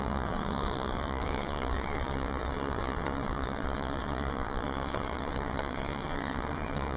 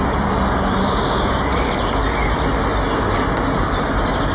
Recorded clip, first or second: second